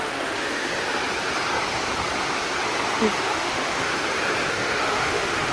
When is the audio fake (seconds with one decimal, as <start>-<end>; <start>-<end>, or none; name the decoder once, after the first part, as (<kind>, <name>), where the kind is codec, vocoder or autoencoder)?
0.0-0.7 (autoencoder, DAC-VAE); 3.2-3.9; 4.5-5.5